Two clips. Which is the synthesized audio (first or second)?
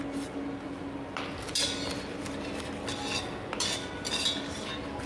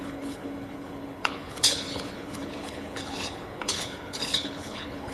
second